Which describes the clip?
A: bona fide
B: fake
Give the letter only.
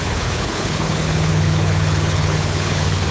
B